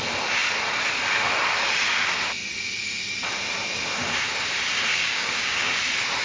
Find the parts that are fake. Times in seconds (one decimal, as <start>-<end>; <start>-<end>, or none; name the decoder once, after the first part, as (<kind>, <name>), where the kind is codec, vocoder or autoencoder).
4.9-5.7 (codec, DAC)